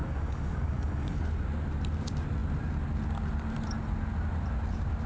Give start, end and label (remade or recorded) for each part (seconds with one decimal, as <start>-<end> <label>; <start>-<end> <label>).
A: 0.0-1.2 remade; 1.2-5.1 recorded